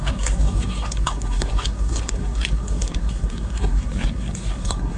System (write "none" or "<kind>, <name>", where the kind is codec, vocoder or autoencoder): codec, SNAC